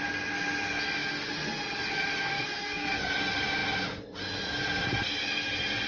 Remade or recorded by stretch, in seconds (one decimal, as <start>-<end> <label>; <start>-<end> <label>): 0.0-2.3 recorded; 2.3-3.0 remade; 3.0-5.9 recorded